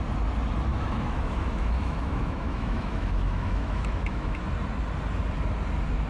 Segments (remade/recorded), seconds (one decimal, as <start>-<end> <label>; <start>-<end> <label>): 0.0-0.7 recorded; 0.7-4.4 remade; 4.4-6.1 recorded